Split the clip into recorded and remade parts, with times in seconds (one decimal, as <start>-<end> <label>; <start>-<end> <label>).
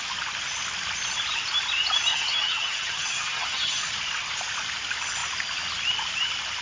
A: 0.0-2.1 recorded; 2.1-3.8 remade; 3.8-6.6 recorded